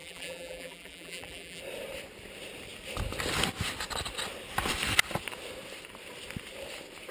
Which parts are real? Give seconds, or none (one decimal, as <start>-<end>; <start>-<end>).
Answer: 1.6-7.1